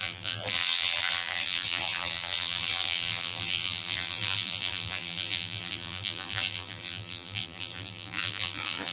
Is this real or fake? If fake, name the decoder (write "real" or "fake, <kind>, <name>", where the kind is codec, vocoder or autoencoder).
fake, vocoder, BigVGAN v2